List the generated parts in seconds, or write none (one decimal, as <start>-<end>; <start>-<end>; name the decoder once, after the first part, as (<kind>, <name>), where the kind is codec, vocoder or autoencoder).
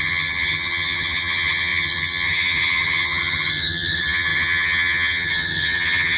0.0-6.2 (vocoder, HiFi-GAN)